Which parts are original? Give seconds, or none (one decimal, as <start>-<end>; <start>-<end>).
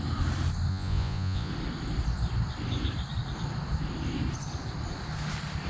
0.0-0.7; 1.5-5.7